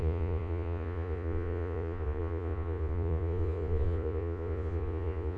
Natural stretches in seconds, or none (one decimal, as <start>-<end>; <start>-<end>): none